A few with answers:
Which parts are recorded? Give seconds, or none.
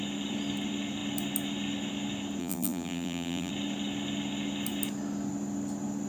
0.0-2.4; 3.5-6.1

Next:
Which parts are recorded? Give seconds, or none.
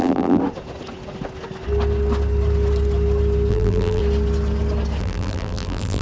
0.4-3.5; 4.0-5.0